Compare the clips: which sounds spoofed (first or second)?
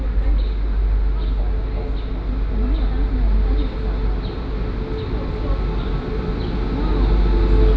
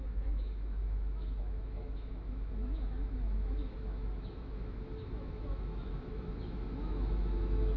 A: second